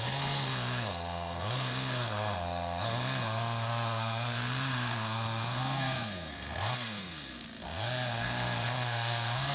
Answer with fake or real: fake